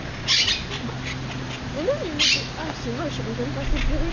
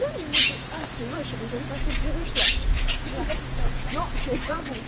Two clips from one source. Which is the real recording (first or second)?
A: first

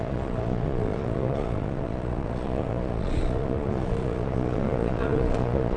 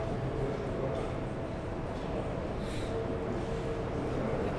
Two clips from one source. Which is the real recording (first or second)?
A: second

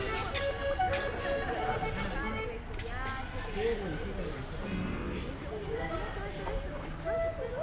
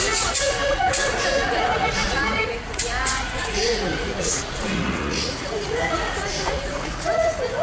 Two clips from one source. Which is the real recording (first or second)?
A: first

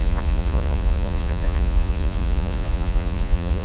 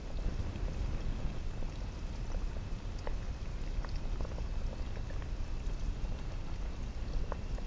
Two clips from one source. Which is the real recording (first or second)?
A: second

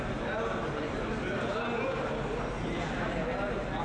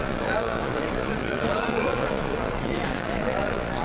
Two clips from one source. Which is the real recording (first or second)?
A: first